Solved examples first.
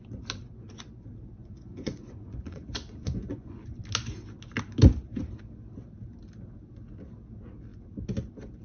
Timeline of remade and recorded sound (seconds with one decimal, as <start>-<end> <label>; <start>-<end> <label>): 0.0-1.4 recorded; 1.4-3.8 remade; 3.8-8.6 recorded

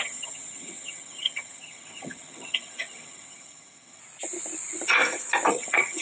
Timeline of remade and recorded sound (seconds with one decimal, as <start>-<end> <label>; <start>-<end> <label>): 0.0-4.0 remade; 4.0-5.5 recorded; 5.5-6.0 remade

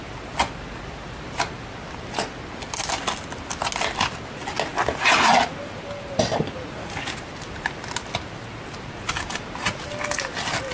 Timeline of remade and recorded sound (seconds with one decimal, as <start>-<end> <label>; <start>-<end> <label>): 0.0-10.7 recorded

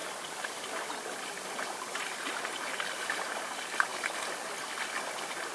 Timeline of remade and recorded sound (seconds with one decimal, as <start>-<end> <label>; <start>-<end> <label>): 0.0-5.5 recorded